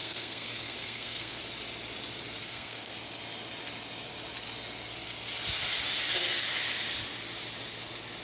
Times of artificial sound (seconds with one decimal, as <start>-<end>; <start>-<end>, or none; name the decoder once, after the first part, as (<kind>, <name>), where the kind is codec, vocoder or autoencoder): 0.0-1.4 (codec, SNAC); 2.4-2.9